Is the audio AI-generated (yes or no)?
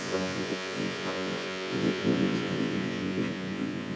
yes